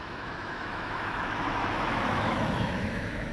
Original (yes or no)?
no